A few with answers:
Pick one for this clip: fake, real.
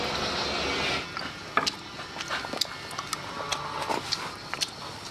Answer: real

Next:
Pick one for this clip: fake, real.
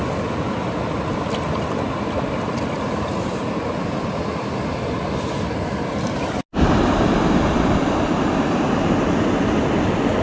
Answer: real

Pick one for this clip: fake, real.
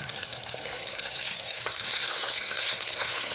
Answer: fake